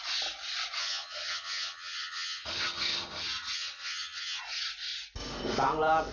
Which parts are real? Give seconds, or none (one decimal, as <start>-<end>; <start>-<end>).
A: 0.0-0.8; 4.4-6.1